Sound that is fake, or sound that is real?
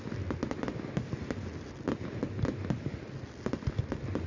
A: real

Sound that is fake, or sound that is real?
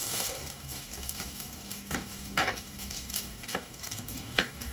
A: fake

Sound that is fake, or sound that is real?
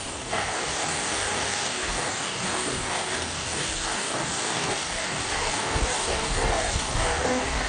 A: fake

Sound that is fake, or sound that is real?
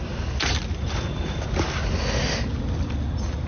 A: real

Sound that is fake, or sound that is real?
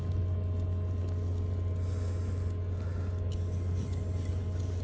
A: real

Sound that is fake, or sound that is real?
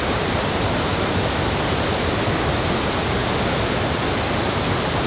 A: real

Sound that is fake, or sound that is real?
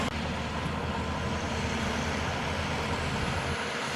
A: real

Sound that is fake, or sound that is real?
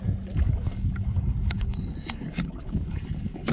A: fake